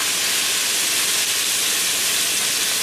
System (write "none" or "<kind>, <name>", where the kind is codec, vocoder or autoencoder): none